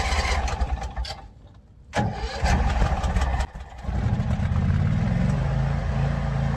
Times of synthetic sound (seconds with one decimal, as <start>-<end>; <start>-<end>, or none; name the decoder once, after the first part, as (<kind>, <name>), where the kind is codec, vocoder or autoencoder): none